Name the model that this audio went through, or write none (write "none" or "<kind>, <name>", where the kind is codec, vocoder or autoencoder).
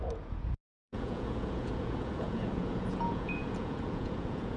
vocoder, Vocos